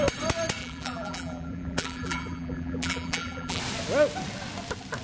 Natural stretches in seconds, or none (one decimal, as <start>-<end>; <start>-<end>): 0.0-0.6; 3.6-5.0